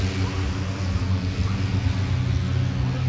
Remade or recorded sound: recorded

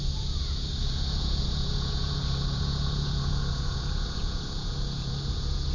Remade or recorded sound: remade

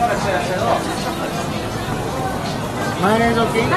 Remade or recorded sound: recorded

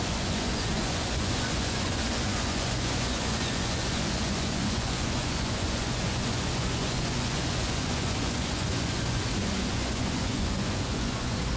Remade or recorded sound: remade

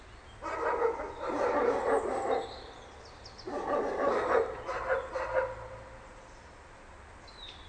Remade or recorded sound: recorded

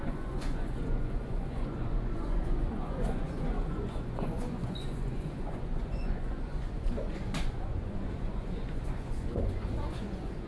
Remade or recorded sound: remade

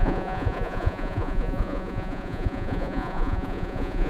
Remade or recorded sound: remade